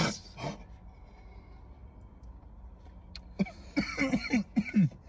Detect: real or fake real